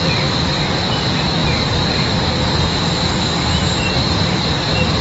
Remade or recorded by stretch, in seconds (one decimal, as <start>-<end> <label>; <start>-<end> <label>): 0.0-4.0 recorded; 4.0-5.0 remade

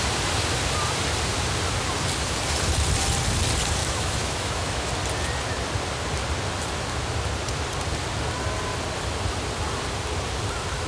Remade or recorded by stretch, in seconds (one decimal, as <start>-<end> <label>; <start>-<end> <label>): 0.0-3.8 recorded; 3.8-4.9 remade; 4.9-10.9 recorded

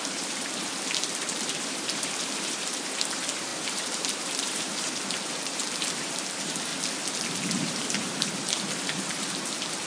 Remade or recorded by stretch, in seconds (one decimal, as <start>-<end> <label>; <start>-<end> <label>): 0.0-0.7 remade; 0.7-1.2 recorded; 1.2-6.7 remade; 6.7-7.3 recorded; 7.3-9.9 remade

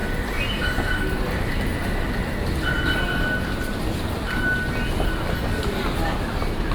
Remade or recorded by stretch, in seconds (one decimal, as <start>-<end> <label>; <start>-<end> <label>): 0.0-6.7 recorded

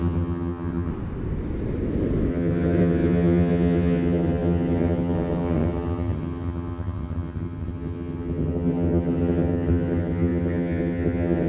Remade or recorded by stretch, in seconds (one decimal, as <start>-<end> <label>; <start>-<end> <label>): 0.0-0.9 remade; 0.9-2.3 recorded; 2.3-11.5 remade

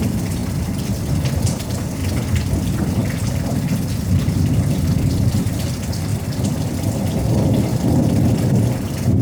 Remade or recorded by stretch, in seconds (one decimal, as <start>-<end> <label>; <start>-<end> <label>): 0.0-2.0 remade; 2.0-3.4 recorded; 3.4-6.1 remade; 6.1-7.1 recorded; 7.1-9.2 remade

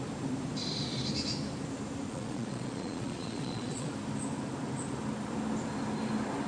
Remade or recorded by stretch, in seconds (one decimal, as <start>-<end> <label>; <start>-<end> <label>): 0.0-2.1 recorded; 2.1-3.9 remade; 3.9-6.5 recorded